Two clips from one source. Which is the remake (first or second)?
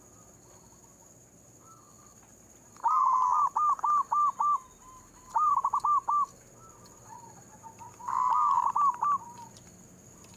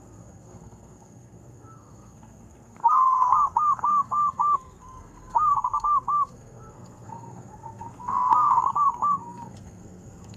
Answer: second